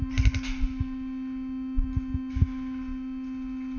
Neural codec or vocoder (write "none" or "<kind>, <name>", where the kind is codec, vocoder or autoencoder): none